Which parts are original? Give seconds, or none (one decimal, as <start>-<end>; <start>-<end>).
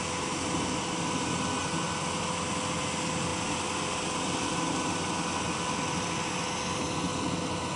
0.0-7.8